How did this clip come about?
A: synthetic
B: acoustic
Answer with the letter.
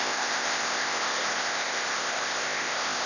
A